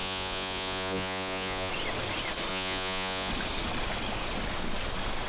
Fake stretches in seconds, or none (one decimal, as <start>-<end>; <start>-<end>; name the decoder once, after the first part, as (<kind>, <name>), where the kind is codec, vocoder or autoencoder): 0.0-1.7 (vocoder, Vocos); 2.5-3.3